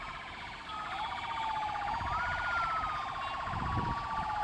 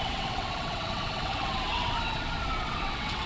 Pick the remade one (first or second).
second